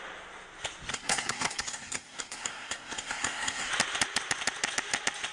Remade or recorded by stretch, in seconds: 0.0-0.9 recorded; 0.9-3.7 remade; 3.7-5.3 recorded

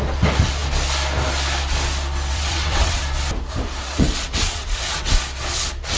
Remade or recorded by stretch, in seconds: 0.0-2.3 recorded; 2.3-3.0 remade; 3.0-3.8 recorded; 3.8-5.1 remade; 5.1-6.0 recorded